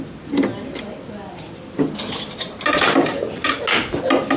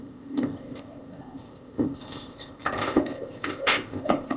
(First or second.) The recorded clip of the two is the first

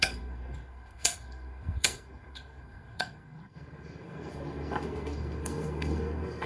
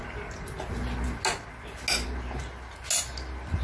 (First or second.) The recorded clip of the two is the second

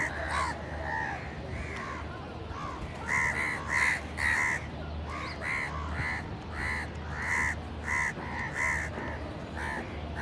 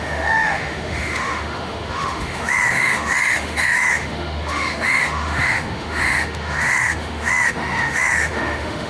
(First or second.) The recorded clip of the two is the first